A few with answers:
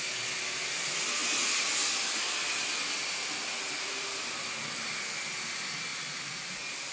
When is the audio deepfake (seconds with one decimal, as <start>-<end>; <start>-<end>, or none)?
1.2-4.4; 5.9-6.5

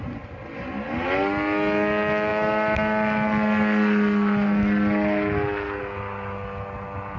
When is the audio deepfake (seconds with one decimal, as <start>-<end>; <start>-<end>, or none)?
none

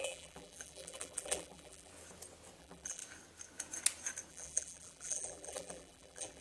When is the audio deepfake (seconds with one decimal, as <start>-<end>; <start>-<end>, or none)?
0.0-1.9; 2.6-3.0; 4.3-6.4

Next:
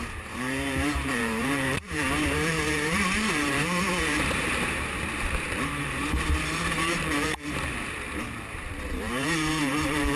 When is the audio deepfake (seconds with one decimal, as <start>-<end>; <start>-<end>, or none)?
0.0-10.2

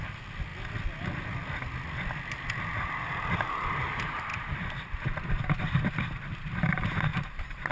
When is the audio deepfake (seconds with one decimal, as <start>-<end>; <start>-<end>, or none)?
0.0-0.5; 2.8-4.3; 5.6-7.7

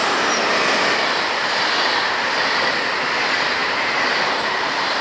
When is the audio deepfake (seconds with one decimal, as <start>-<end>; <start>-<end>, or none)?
3.6-5.0

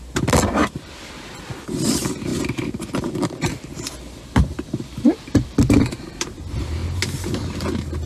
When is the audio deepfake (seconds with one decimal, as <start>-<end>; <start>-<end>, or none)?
0.0-2.3; 2.8-6.8

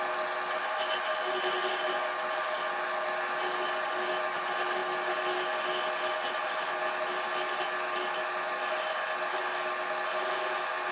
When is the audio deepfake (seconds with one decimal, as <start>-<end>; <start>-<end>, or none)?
none